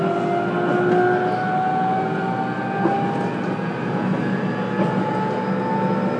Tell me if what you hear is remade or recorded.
recorded